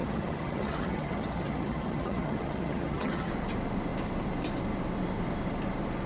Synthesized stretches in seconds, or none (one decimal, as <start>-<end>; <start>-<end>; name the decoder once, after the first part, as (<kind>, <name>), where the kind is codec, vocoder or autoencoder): 0.0-3.3 (vocoder, HiFi-GAN)

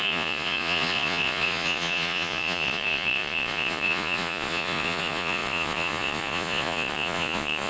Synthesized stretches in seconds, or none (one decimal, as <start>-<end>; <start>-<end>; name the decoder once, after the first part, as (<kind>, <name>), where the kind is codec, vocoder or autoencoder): 0.0-7.7 (vocoder, Vocos)

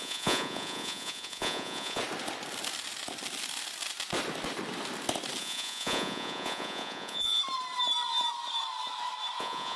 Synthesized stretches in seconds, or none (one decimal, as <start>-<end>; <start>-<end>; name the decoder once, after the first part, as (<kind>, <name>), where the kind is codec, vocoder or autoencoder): 0.0-2.0 (vocoder, Vocos); 5.4-7.4; 9.4-9.8

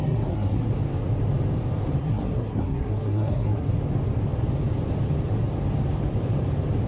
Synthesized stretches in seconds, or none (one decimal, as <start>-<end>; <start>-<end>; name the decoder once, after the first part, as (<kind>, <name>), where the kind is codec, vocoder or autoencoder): 0.0-0.7 (codec, SNAC); 2.0-3.7

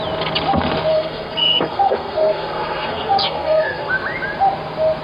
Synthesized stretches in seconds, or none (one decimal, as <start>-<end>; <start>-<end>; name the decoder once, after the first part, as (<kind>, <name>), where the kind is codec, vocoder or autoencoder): 0.9-3.9 (codec, SNAC)

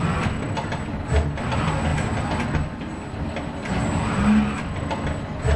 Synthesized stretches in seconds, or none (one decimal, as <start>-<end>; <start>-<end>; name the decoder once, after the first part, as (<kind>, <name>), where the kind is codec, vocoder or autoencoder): none

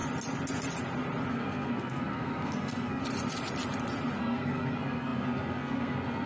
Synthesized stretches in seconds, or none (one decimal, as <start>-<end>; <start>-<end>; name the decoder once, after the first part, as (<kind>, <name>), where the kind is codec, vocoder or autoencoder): 1.3-3.0 (codec, SNAC); 4.2-6.3

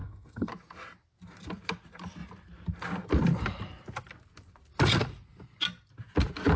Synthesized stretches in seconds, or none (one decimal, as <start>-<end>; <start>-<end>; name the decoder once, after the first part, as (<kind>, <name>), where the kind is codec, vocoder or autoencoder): 0.0-0.5 (codec, SNAC)